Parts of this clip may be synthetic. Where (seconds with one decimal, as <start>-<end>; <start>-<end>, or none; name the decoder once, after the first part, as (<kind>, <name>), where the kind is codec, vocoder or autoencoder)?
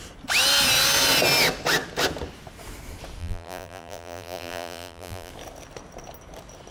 3.2-5.3 (vocoder, BigVGAN v2)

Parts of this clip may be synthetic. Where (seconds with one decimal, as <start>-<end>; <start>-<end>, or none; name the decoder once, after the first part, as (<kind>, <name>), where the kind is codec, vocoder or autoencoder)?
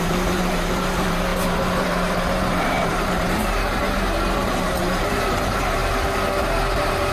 0.0-5.8 (vocoder, BigVGAN v2); 6.4-7.1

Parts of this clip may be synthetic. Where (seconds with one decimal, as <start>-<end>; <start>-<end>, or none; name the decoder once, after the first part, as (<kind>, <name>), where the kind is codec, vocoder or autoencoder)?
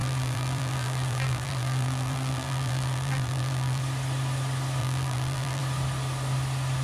0.0-3.8 (vocoder, BigVGAN v2); 4.8-5.6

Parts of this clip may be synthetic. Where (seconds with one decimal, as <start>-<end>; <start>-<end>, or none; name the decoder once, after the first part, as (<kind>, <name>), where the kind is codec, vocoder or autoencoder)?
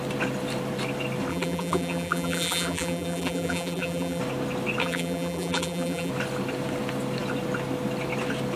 1.3-4.2 (vocoder, BigVGAN v2); 4.8-6.1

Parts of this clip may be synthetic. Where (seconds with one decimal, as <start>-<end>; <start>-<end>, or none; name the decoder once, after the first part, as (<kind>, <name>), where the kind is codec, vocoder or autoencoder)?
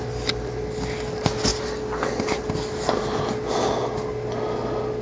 none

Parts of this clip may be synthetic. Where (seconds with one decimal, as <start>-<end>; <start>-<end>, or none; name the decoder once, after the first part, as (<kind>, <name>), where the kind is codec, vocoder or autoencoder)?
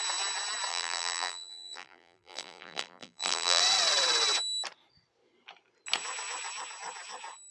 0.7-3.6 (vocoder, BigVGAN v2)